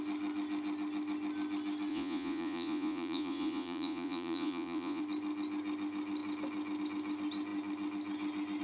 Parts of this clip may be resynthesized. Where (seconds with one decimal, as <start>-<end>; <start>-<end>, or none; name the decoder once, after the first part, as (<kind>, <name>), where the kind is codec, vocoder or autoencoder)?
1.9-5.0 (vocoder, Vocos)